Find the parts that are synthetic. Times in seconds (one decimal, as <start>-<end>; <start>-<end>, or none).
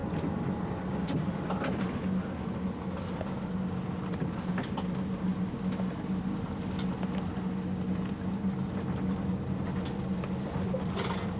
none